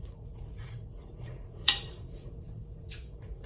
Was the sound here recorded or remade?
remade